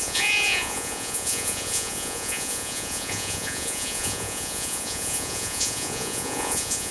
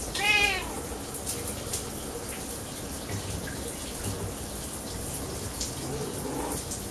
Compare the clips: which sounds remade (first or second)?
first